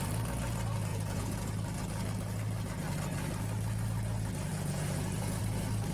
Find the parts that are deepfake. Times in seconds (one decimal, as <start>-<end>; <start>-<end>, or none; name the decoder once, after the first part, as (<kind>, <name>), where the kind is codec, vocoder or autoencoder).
0.9-1.5 (vocoder, Vocos); 4.5-5.4